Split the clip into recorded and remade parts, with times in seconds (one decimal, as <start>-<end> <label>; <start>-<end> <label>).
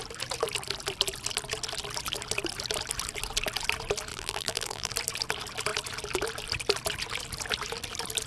0.0-4.1 recorded; 4.1-4.9 remade; 4.9-8.3 recorded